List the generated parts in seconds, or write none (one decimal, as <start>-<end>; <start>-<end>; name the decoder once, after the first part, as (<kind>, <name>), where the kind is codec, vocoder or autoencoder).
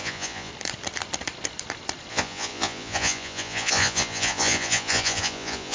0.0-0.5 (vocoder, Vocos); 2.1-5.7